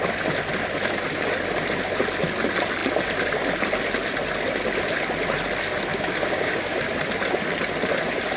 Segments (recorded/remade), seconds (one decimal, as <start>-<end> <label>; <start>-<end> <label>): 0.0-5.9 recorded; 5.9-6.8 remade; 6.8-8.4 recorded